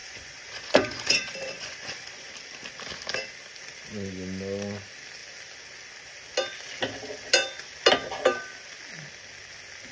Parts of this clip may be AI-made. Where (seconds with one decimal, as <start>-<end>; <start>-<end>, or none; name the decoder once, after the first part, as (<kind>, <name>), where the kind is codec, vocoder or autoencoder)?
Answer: 0.0-2.3 (vocoder, Vocos)